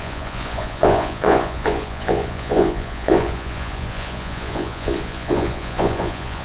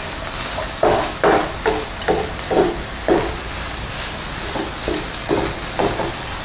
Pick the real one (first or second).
second